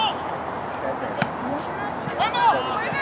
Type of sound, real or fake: real